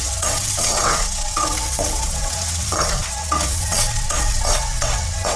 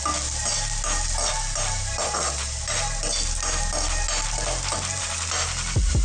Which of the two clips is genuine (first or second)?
second